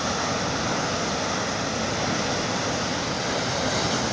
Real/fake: real